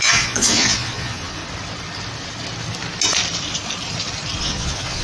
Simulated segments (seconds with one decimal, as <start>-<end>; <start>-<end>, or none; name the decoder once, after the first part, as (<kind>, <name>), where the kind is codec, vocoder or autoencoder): 0.0-1.4 (vocoder, Vocos); 4.4-5.0

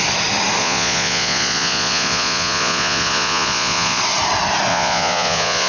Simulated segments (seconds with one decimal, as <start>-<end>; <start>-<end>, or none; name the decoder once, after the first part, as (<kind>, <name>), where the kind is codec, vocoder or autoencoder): 0.6-4.0 (vocoder, Vocos); 4.7-5.7

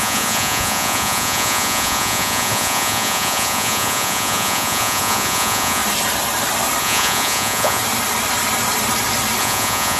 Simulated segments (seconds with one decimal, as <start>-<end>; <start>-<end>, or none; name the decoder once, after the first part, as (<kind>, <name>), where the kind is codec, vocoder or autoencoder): 0.0-5.8 (vocoder, Vocos); 6.8-7.8; 9.4-10.0

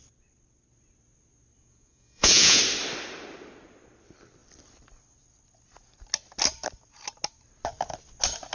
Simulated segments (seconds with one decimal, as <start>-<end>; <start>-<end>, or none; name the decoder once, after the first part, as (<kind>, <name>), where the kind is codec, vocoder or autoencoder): 1.6-2.6 (vocoder, Vocos)

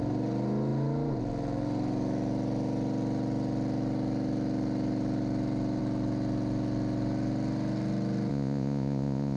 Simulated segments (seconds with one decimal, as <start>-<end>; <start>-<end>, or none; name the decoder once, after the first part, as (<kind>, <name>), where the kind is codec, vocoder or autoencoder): 8.3-9.4 (vocoder, Vocos)

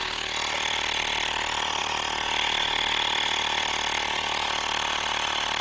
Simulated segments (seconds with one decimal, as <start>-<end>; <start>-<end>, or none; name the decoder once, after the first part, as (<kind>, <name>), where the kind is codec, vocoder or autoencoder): none